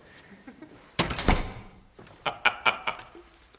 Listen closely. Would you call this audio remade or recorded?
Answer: remade